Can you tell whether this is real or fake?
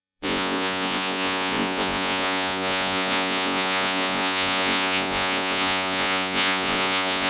fake